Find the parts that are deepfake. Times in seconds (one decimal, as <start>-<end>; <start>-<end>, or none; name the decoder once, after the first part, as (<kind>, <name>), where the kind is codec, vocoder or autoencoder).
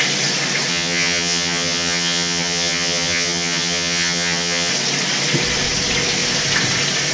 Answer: 0.7-4.7 (vocoder, HiFi-GAN)